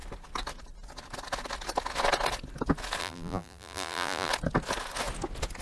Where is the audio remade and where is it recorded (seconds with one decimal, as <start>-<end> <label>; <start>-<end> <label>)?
0.0-3.0 recorded; 3.0-4.3 remade; 4.3-5.6 recorded

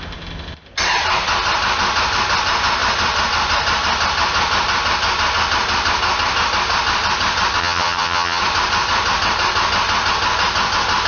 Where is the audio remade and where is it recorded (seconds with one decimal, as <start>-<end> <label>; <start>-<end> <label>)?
0.0-7.6 recorded; 7.6-8.4 remade; 8.4-11.1 recorded

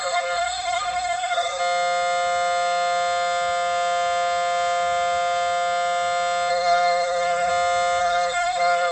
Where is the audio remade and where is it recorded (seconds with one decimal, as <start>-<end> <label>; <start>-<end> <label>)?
0.0-1.6 remade; 1.6-6.5 recorded; 6.5-7.5 remade; 7.5-8.0 recorded; 8.0-8.9 remade

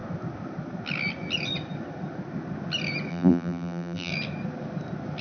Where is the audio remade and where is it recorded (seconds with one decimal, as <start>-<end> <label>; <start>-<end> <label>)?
0.0-3.1 recorded; 3.1-4.1 remade; 4.1-5.2 recorded

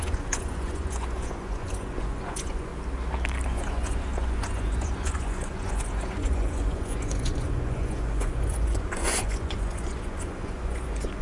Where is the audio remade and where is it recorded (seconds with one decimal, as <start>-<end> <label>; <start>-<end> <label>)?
0.0-2.7 remade; 2.7-3.5 recorded; 3.5-11.2 remade